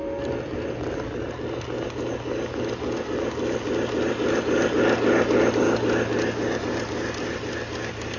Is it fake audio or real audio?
real